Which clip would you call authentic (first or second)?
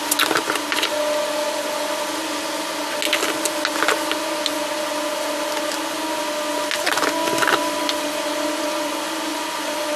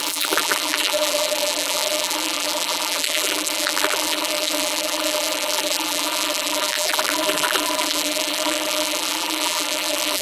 first